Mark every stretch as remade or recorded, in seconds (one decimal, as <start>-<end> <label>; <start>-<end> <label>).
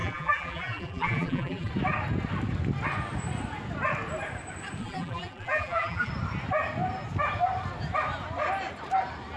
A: 0.0-1.7 remade; 1.7-4.8 recorded; 4.8-6.1 remade; 6.1-9.4 recorded